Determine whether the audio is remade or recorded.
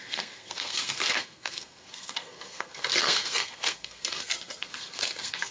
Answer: remade